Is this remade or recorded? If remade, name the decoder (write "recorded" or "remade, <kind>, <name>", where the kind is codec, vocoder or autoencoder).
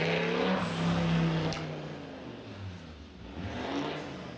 recorded